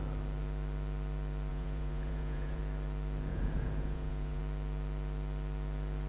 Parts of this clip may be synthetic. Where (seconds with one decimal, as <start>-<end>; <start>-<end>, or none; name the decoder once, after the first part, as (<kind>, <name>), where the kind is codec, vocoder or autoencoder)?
1.5-2.6 (vocoder, Vocos); 3.3-4.4